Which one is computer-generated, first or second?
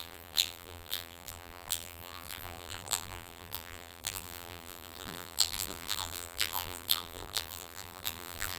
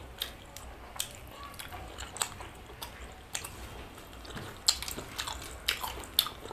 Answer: first